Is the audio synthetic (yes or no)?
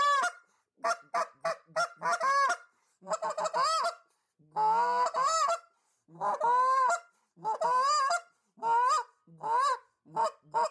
no